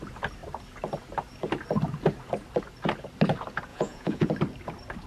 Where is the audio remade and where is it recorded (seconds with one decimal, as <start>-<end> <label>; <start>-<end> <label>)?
0.0-3.7 recorded; 3.7-4.3 remade; 4.3-5.1 recorded